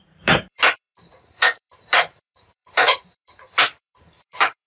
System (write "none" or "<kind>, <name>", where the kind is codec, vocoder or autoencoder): vocoder, BigVGAN v2